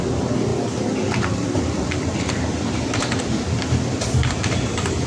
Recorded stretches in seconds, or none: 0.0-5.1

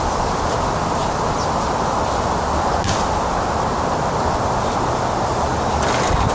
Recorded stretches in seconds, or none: 0.0-6.3

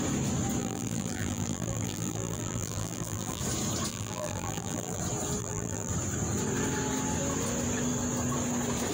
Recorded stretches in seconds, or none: 0.0-0.6; 3.4-3.9; 5.0-5.4; 5.9-8.9

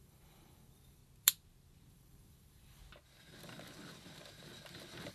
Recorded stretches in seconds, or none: 1.0-1.9; 2.8-5.1

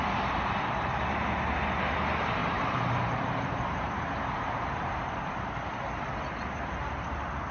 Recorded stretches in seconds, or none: 0.0-2.4; 5.4-7.5

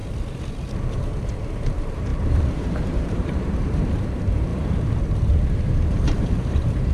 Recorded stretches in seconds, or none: 0.0-0.8